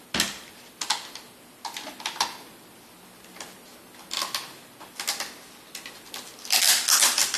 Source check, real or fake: real